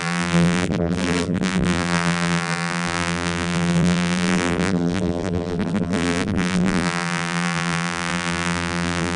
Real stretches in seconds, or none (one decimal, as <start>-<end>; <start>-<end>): none